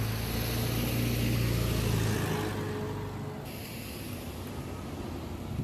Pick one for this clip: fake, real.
real